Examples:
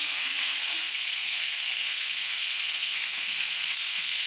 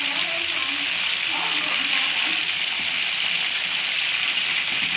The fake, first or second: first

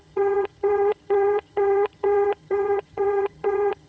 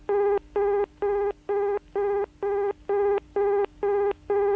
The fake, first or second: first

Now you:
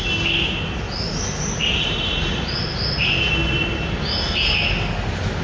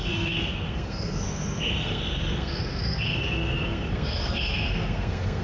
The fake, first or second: second